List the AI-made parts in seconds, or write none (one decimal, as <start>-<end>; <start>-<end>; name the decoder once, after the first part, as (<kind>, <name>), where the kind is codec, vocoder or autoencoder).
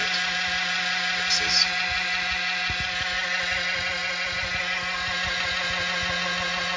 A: none